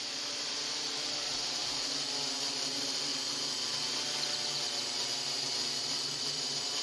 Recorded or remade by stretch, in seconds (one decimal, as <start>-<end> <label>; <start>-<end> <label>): 0.0-1.6 remade; 1.6-2.5 recorded; 2.5-3.1 remade; 3.1-5.8 recorded; 5.8-6.8 remade